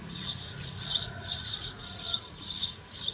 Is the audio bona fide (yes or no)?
no